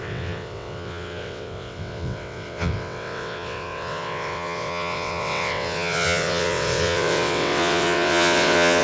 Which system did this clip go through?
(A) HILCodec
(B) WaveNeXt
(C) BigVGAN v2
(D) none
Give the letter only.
B